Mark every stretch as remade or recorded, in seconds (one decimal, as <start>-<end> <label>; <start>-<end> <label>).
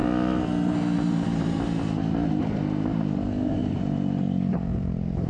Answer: 0.0-2.4 recorded; 2.4-3.6 remade; 3.6-4.5 recorded; 4.5-5.3 remade